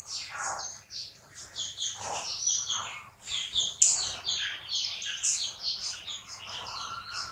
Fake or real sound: real